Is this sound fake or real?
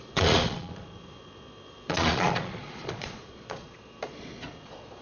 fake